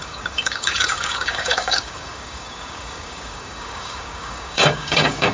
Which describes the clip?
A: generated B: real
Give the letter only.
A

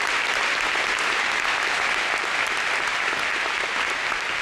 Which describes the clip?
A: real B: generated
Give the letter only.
A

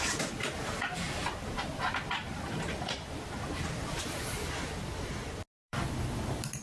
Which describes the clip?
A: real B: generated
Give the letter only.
B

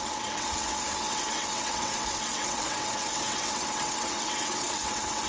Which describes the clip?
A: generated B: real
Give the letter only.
A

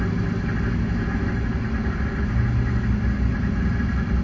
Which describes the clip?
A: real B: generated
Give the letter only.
A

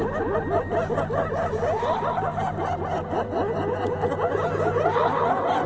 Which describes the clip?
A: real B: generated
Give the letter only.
A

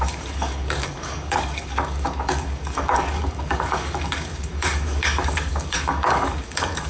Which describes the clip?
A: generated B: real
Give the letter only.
A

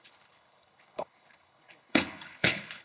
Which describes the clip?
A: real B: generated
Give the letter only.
B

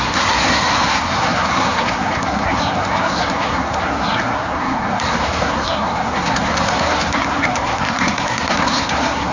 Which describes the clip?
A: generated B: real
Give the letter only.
A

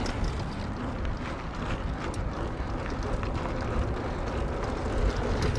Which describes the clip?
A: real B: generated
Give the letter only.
A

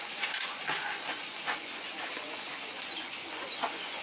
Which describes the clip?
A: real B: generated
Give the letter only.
B